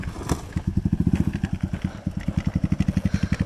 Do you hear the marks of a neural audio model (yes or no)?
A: no